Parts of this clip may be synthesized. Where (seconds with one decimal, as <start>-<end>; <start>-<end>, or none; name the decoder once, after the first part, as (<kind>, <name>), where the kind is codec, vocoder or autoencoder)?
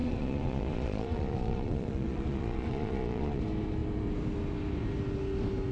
0.0-3.4 (vocoder, Vocos)